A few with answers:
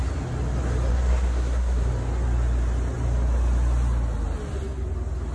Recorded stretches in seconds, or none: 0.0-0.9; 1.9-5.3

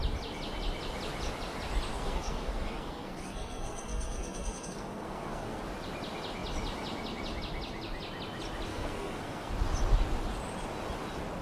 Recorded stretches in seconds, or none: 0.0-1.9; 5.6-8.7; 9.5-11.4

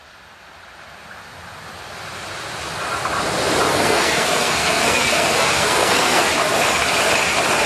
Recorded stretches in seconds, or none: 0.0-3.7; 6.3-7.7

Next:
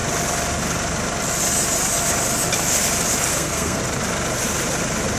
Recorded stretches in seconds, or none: 0.0-3.3; 3.8-5.2

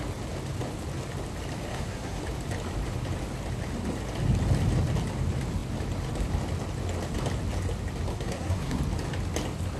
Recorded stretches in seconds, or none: 0.0-1.7; 2.2-8.1; 8.8-9.8

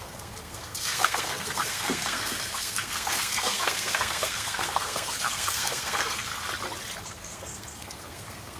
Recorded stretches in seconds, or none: 6.3-7.0